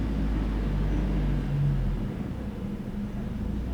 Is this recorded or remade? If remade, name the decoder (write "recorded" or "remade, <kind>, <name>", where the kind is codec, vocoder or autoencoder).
recorded